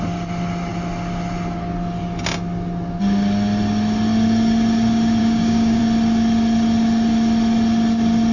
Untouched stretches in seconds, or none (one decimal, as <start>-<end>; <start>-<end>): 0.0-5.2; 5.8-8.3

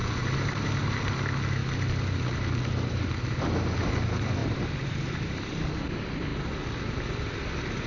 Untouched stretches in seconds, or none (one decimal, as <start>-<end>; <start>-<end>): 0.0-4.4; 5.5-7.9

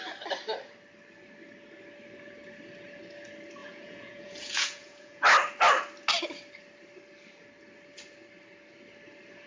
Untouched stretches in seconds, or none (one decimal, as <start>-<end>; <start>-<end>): 0.0-3.6; 5.2-9.5